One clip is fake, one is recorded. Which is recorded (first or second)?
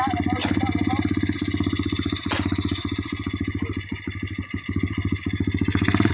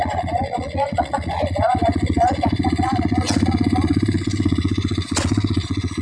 first